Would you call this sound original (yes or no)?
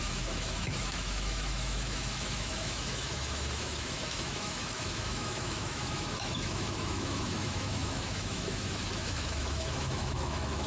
no